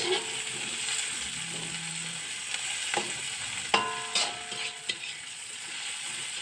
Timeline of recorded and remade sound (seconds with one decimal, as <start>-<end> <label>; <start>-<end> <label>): 0.0-4.7 recorded; 4.7-6.4 remade